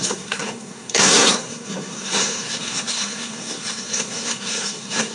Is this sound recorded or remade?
remade